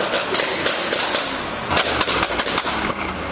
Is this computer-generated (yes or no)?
no